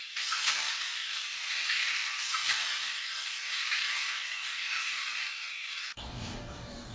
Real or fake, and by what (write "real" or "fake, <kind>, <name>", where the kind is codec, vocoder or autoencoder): fake, codec, DAC